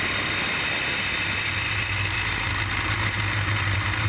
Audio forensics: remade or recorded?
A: recorded